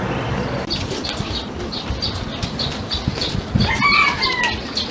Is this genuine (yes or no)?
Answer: yes